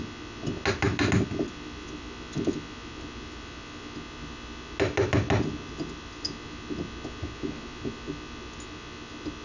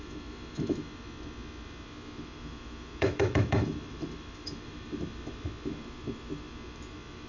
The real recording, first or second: first